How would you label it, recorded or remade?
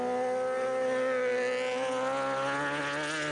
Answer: recorded